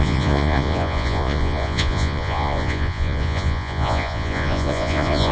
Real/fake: fake